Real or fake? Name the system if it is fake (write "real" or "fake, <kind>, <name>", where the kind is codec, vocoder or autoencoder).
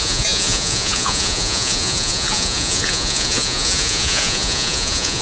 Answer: fake, vocoder, Vocos